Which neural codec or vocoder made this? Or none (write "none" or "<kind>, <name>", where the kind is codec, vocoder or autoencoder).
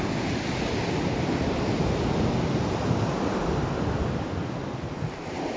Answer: none